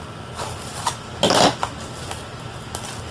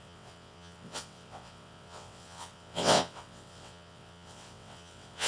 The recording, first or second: first